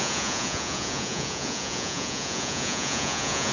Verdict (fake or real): fake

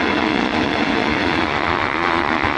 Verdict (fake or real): fake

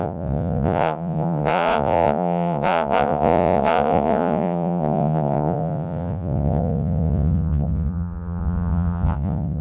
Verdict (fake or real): fake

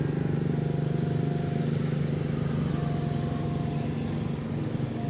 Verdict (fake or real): real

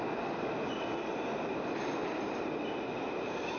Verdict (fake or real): real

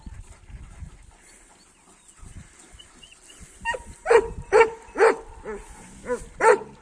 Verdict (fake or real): real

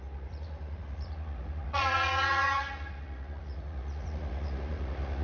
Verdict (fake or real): fake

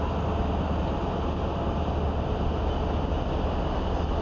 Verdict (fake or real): real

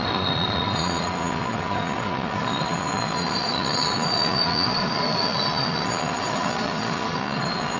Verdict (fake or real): fake